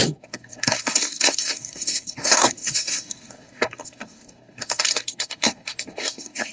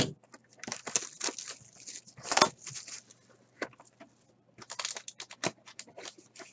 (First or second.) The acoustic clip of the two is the second